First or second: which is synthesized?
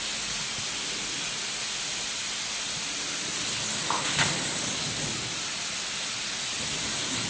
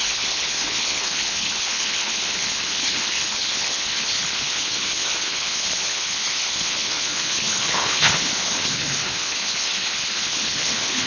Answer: second